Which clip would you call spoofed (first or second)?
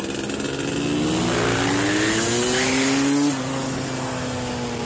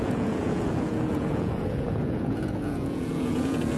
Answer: second